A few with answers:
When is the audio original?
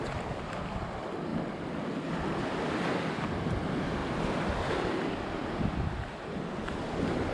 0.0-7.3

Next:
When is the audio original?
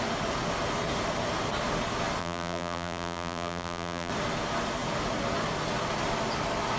0.0-2.2; 4.1-6.8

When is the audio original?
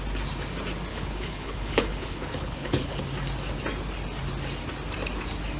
0.0-0.9; 3.0-5.6